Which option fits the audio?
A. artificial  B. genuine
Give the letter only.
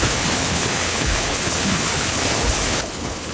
A